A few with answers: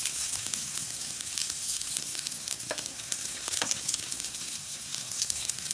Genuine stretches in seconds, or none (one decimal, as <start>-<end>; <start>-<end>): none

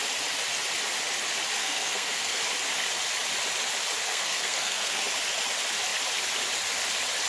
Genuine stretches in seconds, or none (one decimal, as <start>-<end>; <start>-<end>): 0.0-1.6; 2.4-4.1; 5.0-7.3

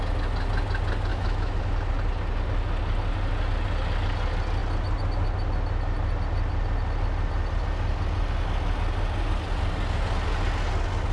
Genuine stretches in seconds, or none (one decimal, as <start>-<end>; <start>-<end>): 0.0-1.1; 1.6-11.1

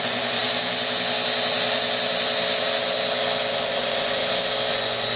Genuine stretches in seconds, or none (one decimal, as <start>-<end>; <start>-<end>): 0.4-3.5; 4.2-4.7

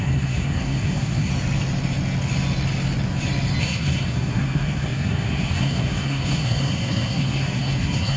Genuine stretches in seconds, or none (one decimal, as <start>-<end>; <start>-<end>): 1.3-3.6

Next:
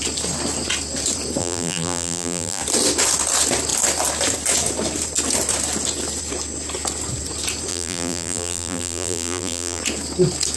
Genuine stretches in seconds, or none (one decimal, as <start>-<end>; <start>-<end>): 0.0-1.4; 2.6-7.7; 9.8-10.6